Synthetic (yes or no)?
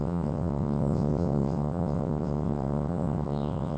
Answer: yes